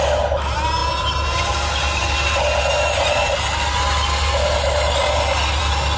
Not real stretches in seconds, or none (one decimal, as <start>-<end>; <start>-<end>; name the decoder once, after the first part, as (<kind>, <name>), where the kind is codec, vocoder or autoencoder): none